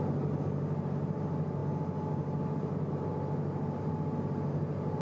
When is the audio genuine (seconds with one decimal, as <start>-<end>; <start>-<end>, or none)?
0.0-5.0